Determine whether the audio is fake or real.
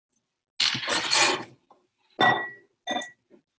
real